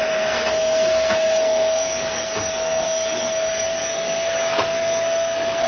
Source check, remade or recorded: remade